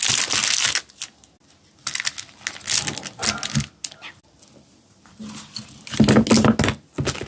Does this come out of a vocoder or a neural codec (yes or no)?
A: no